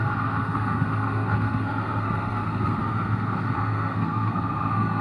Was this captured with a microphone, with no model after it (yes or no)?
no